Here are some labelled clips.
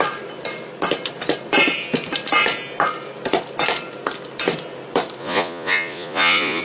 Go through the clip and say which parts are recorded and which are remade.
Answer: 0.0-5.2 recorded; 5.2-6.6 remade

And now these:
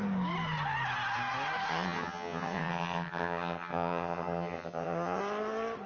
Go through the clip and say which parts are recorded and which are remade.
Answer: 0.0-1.7 recorded; 1.7-5.2 remade; 5.2-5.9 recorded

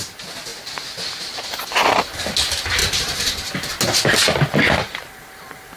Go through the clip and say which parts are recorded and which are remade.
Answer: 0.0-2.8 recorded; 2.8-3.5 remade; 3.5-4.8 recorded; 4.8-5.8 remade

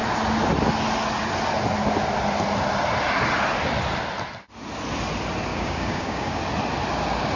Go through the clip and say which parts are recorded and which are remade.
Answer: 0.0-5.5 recorded; 5.5-6.4 remade; 6.4-7.4 recorded